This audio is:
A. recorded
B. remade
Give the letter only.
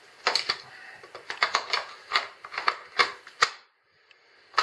A